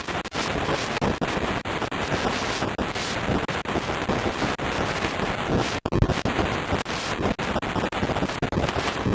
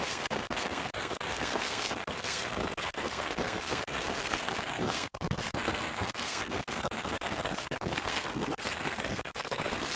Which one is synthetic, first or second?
second